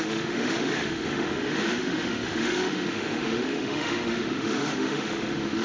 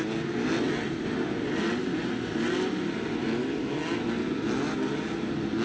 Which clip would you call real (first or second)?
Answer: second